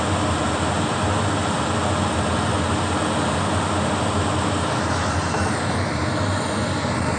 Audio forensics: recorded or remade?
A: recorded